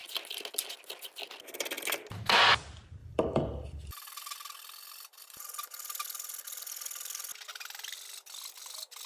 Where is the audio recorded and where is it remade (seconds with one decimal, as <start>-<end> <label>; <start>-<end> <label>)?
0.0-3.0 recorded; 3.0-7.3 remade; 7.3-9.1 recorded